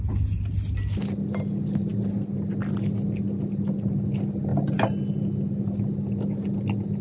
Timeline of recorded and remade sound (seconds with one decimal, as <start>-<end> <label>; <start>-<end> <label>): 0.0-7.0 recorded